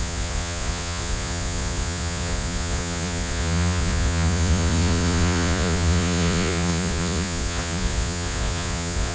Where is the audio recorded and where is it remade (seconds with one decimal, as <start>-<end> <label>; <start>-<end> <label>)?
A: 0.0-9.1 remade